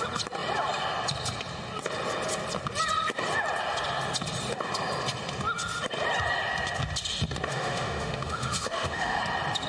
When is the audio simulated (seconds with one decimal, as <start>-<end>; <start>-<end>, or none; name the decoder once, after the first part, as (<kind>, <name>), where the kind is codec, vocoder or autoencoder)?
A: 7.5-9.2 (autoencoder, DAC-VAE)